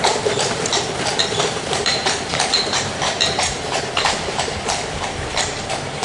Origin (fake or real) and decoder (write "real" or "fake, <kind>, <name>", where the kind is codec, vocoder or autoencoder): fake, vocoder, BigVGAN v2